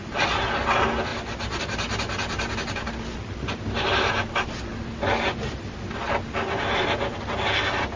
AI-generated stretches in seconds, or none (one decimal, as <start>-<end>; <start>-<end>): none

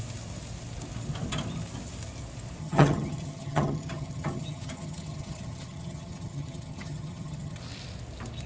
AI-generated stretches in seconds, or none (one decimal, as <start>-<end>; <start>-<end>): 2.6-7.6

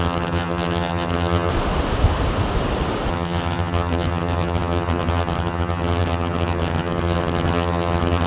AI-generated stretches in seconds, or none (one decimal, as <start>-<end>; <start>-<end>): 0.0-1.5; 3.1-8.3